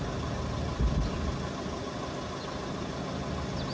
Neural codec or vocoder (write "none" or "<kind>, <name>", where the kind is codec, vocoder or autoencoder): none